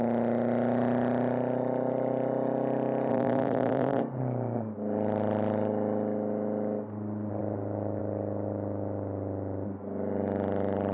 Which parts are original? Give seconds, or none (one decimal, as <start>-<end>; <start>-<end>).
0.0-3.1; 4.0-10.9